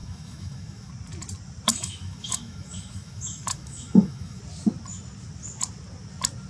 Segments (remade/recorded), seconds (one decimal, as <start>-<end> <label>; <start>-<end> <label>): 0.0-0.9 remade; 0.9-1.7 recorded; 1.7-4.4 remade; 4.4-6.5 recorded